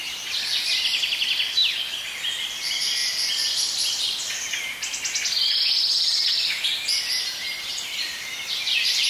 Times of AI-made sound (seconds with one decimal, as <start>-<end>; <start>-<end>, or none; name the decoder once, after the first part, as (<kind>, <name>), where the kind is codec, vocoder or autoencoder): 0.0-3.0 (vocoder, BigVGAN v2); 5.8-9.1